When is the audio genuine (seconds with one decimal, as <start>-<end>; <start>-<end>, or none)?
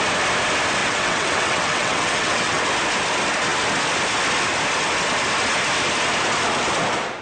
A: 0.0-0.8; 2.6-7.2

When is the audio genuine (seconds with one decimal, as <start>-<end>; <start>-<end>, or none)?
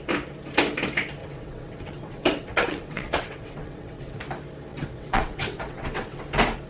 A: 0.0-1.2; 4.2-4.7; 6.2-6.7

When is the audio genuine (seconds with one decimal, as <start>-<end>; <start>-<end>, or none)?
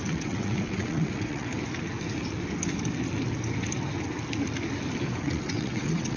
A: 1.5-5.2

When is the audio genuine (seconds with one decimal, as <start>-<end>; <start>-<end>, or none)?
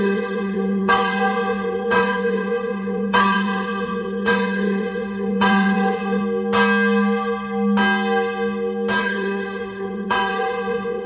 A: 6.2-9.0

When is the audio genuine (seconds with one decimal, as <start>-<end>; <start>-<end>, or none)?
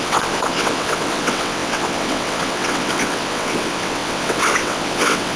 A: none